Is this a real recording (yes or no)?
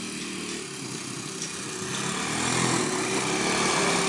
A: yes